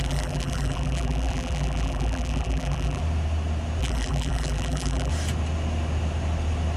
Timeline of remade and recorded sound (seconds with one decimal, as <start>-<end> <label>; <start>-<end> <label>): 0.0-3.0 remade; 3.0-3.8 recorded; 3.8-5.1 remade; 5.1-6.8 recorded